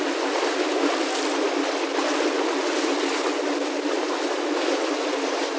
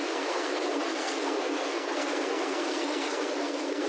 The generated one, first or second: second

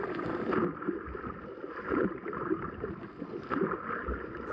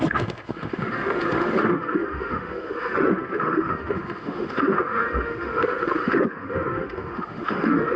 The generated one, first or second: second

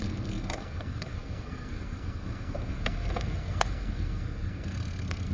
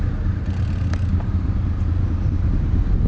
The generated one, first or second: first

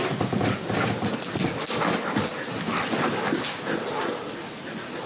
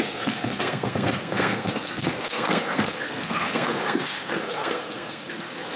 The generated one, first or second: second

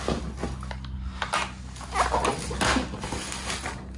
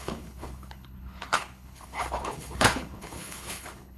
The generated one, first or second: second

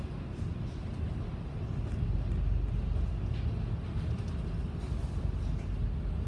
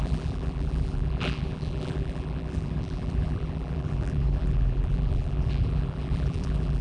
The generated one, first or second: second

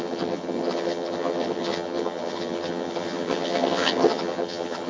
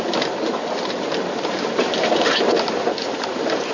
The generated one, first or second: first